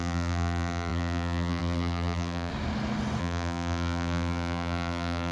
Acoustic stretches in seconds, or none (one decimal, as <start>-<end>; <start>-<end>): 2.5-3.2